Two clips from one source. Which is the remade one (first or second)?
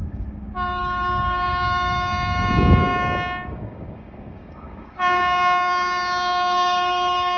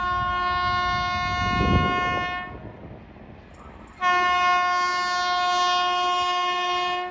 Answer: first